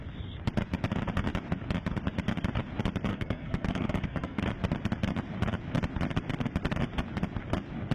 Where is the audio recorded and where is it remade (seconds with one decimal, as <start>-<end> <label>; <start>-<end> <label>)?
0.0-3.1 recorded; 3.1-4.4 remade; 4.4-7.9 recorded